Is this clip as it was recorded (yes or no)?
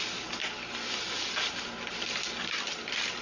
yes